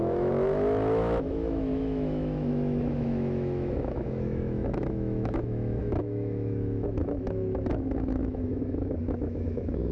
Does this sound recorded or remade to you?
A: remade